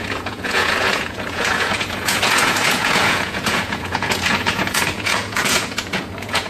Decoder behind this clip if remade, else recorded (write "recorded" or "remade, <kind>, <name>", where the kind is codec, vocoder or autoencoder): remade, vocoder, Vocos